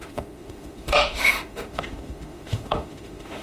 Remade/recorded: remade